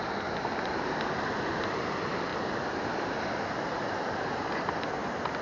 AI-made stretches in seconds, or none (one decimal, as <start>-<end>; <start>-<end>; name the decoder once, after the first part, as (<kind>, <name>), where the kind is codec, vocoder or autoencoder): none